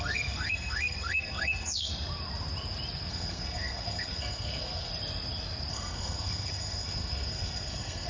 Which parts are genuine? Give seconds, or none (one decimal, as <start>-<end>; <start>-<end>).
1.9-3.1; 4.9-5.7